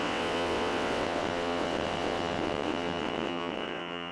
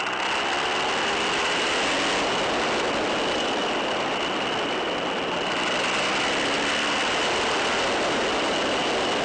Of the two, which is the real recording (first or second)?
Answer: second